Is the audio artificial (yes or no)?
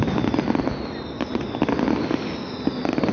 no